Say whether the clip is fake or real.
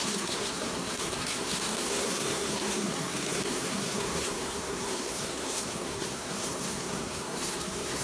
fake